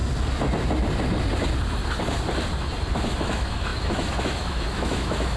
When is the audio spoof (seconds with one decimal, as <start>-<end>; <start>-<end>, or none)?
3.2-5.4